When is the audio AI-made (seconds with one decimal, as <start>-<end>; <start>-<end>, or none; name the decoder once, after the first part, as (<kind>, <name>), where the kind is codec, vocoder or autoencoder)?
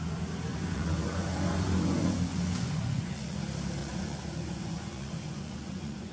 0.5-3.4 (vocoder, Vocos); 3.8-6.1